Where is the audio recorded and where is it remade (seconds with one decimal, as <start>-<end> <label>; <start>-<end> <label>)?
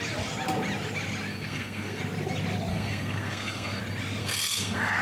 0.0-1.3 recorded; 1.3-2.0 remade; 2.0-2.7 recorded; 2.7-3.8 remade; 3.8-4.2 recorded; 4.2-5.0 remade